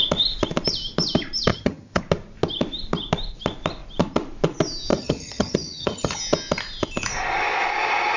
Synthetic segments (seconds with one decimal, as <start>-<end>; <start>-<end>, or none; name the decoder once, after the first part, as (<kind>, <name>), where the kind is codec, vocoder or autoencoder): 1.5-2.0 (vocoder, HiFi-GAN); 4.9-6.2